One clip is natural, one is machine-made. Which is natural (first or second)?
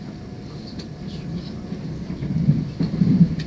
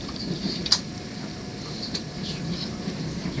first